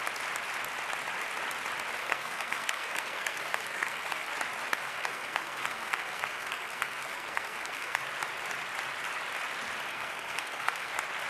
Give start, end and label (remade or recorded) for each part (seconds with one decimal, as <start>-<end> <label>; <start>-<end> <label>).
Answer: 0.0-2.0 recorded; 2.0-4.3 remade; 4.3-4.7 recorded; 4.7-8.0 remade; 8.0-9.9 recorded; 9.9-10.9 remade; 10.9-11.3 recorded

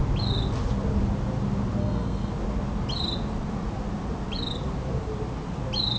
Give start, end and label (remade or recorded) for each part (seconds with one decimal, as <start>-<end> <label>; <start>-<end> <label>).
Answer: 0.0-1.8 recorded; 1.8-2.3 remade; 2.3-6.0 recorded

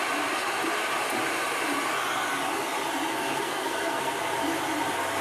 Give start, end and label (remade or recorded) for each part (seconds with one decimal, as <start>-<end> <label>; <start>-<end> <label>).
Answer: 0.0-3.1 recorded; 3.1-4.2 remade; 4.2-5.2 recorded

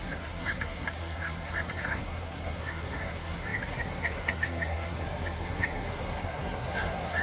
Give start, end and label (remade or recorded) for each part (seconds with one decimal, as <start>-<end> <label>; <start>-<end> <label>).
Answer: 0.0-7.2 remade

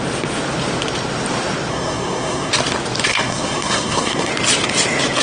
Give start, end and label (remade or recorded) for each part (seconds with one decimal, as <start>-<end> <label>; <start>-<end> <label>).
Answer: 0.0-1.7 recorded; 1.7-2.5 remade; 2.5-3.1 recorded; 3.1-4.3 remade; 4.3-5.2 recorded